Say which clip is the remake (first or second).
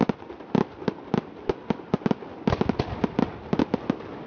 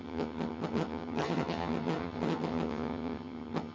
second